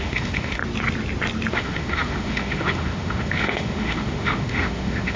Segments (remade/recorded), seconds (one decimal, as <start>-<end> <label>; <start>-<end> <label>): 0.0-0.6 remade; 0.6-1.5 recorded; 1.5-5.2 remade